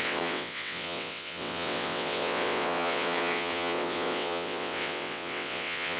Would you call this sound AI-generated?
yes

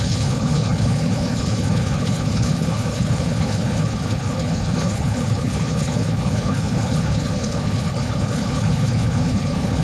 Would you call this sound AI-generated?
yes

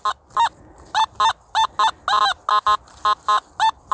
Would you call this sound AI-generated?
no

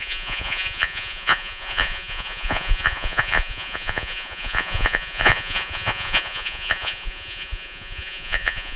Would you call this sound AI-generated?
yes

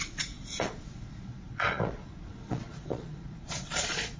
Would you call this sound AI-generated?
yes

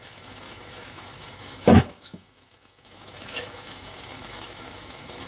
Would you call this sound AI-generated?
yes